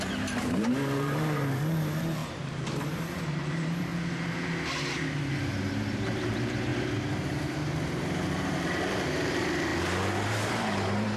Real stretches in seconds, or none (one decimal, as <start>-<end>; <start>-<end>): 3.9-5.7